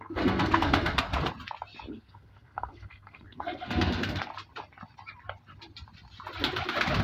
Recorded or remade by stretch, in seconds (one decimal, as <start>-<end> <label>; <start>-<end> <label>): 0.0-1.1 remade; 1.1-1.9 recorded; 1.9-4.3 remade; 4.3-7.0 recorded